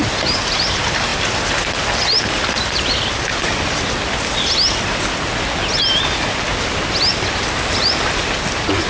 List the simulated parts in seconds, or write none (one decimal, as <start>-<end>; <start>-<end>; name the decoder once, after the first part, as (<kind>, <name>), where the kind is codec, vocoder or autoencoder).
none

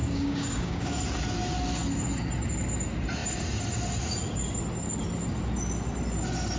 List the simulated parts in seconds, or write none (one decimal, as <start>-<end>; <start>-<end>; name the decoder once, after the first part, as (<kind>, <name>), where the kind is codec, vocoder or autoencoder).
0.0-1.0 (codec, DAC)

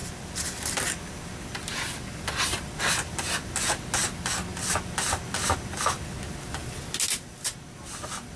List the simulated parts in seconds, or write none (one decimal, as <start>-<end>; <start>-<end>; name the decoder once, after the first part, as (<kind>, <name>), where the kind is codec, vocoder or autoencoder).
none

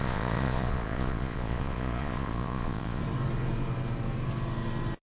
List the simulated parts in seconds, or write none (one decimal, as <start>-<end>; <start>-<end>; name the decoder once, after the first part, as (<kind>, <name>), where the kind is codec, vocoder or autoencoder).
0.0-3.0 (vocoder, Vocos)

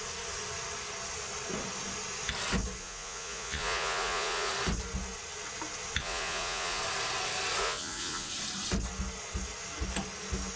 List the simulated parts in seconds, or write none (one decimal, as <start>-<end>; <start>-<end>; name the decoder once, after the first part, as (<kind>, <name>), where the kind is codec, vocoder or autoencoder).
2.8-4.5 (vocoder, Vocos); 6.0-6.8; 7.6-8.3

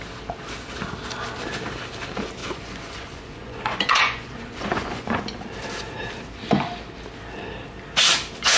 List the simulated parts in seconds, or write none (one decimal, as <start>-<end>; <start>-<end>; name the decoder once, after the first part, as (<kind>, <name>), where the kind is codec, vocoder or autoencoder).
2.4-5.2 (vocoder, Vocos)